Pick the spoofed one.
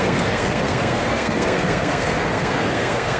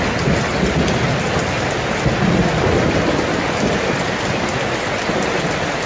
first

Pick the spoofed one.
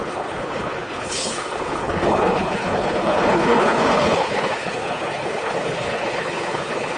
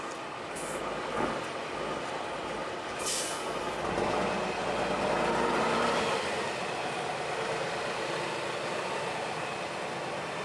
first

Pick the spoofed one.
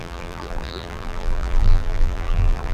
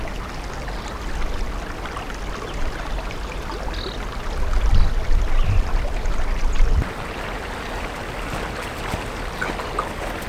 first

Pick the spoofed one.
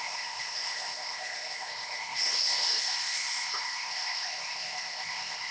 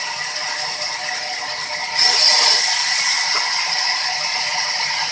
first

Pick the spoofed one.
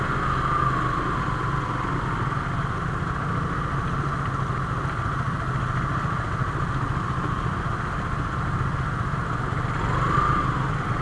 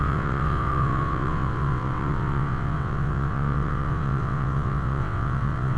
second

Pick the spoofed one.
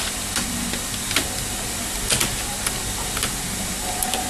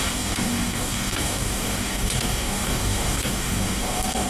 second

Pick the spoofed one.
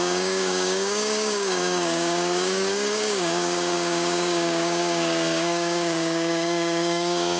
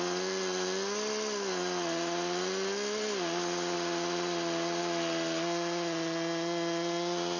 first